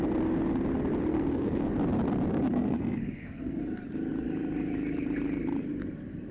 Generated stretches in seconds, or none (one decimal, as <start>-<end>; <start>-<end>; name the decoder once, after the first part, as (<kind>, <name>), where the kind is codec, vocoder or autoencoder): 1.1-1.7 (codec, SNAC); 2.3-3.6